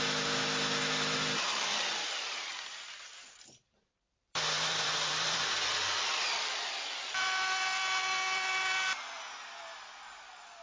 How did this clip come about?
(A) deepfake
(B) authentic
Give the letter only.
A